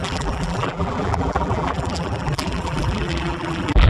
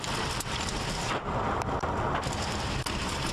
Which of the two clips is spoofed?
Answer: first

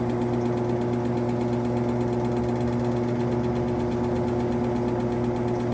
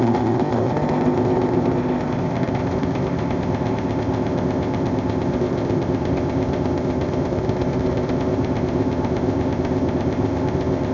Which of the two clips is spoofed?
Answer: second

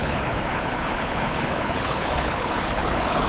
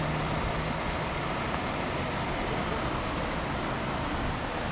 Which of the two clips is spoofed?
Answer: first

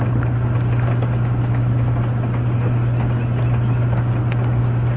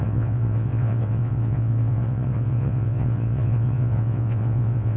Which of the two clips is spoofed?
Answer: second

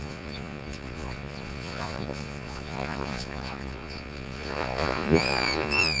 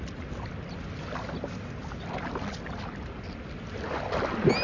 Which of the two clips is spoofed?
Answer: first